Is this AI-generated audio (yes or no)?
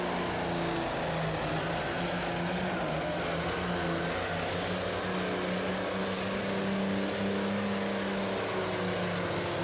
no